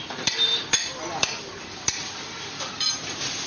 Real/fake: fake